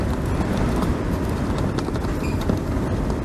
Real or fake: real